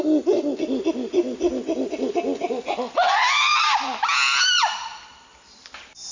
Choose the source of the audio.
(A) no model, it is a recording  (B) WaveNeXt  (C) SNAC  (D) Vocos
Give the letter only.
A